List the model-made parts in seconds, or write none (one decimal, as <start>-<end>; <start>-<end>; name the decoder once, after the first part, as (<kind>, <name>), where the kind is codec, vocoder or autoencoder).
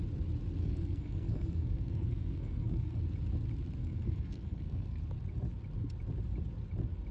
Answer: 0.6-3.0 (codec, SNAC); 3.8-5.0